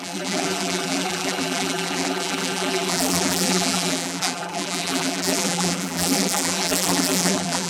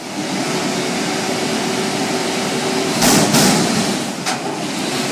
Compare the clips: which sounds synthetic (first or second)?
first